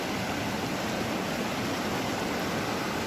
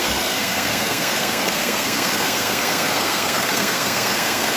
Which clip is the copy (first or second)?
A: second